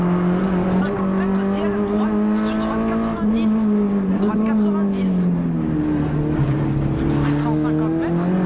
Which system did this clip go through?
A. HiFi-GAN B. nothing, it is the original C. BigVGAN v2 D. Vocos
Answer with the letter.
B